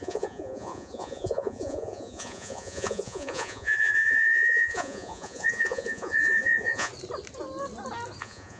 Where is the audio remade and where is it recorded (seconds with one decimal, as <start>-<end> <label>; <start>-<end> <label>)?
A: 0.0-6.9 remade; 6.9-8.2 recorded; 8.2-8.6 remade